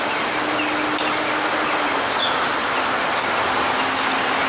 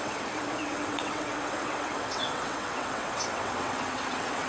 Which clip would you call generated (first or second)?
second